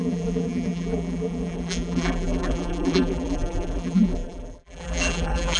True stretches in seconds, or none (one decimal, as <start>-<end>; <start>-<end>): none